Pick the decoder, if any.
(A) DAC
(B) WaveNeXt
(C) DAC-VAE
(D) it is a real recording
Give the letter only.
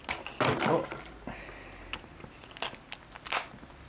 D